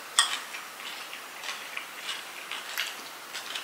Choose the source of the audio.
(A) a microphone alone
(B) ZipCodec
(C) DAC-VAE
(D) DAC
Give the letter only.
A